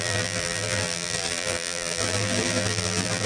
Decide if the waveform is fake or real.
fake